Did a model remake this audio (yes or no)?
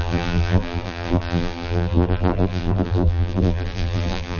yes